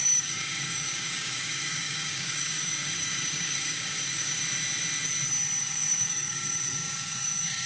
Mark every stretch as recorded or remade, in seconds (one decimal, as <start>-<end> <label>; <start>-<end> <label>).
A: 0.0-4.4 remade; 4.4-5.6 recorded; 5.6-7.7 remade